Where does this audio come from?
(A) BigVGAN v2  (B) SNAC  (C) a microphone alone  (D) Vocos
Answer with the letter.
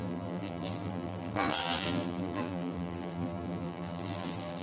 A